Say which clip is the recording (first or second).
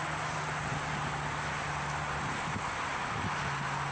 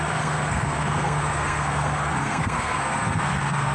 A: first